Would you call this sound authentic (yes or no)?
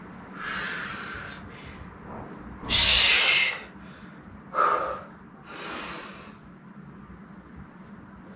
yes